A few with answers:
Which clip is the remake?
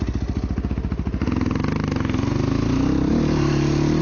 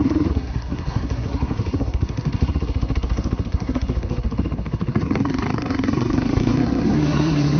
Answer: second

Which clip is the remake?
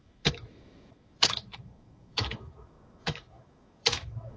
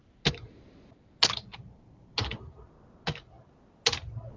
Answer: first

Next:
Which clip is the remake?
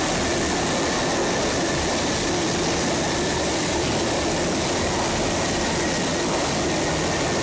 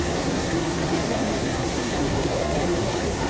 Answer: second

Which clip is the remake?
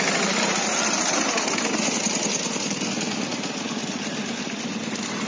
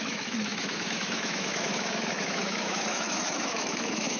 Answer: second